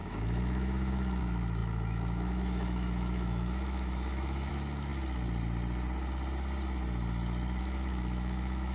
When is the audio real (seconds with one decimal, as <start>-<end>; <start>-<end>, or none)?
4.9-7.6